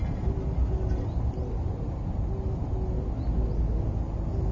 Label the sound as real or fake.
real